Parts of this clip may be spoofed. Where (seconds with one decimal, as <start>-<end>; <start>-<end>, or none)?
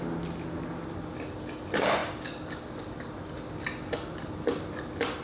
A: none